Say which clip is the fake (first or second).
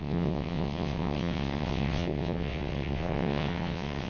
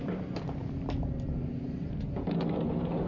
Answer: first